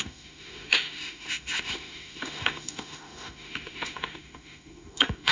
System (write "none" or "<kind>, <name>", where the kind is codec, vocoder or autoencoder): autoencoder, DAC-VAE